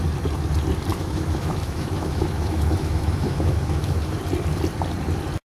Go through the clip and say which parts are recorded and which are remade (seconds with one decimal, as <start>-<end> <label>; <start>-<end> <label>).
0.0-0.9 recorded; 0.9-4.2 remade; 4.2-5.5 recorded